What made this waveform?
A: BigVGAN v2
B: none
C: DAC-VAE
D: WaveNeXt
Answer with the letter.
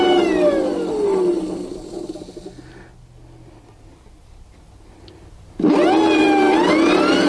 B